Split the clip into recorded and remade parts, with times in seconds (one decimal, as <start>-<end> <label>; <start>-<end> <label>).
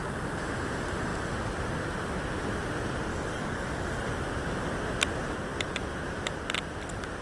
0.0-3.1 recorded; 3.1-4.1 remade; 4.1-7.2 recorded